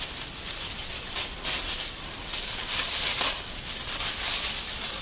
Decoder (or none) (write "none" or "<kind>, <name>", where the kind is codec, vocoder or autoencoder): vocoder, BigVGAN v2